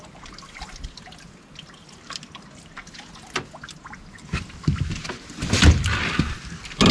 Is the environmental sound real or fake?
real